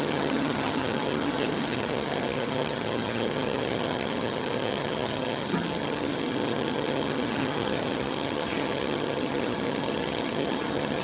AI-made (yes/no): yes